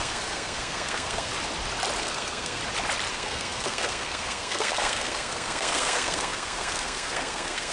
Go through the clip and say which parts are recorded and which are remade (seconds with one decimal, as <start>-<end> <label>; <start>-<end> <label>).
0.0-1.3 remade; 1.3-2.0 recorded; 2.0-2.6 remade; 2.6-3.1 recorded; 3.1-7.7 remade

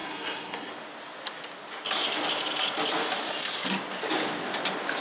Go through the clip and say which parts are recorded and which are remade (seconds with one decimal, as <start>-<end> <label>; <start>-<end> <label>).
0.0-0.7 remade; 0.7-5.0 recorded

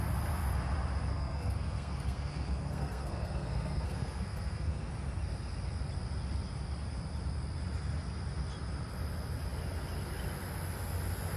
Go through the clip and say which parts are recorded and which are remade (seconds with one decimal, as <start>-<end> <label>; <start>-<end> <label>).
0.0-1.1 recorded; 1.1-4.9 remade; 4.9-11.4 recorded